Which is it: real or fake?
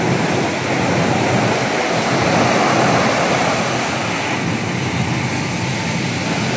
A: real